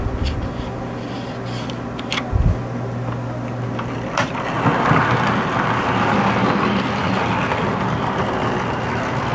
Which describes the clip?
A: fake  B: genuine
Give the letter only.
B